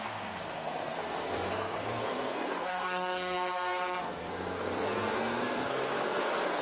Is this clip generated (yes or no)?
yes